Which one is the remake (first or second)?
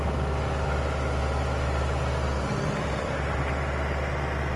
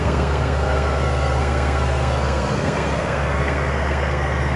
second